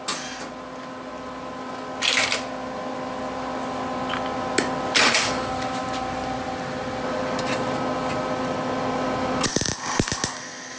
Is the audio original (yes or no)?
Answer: yes